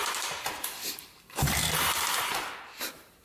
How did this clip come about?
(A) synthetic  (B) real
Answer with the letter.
A